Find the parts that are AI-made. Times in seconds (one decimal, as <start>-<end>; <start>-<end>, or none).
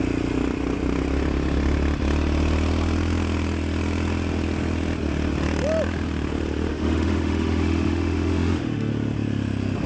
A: 6.7-8.9